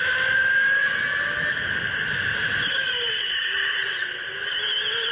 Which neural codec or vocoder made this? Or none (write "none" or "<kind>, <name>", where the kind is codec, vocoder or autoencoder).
none